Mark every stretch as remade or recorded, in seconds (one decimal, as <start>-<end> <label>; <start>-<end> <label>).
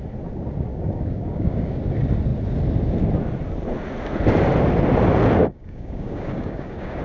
0.0-0.7 recorded; 0.7-1.8 remade; 1.8-5.4 recorded; 5.4-7.0 remade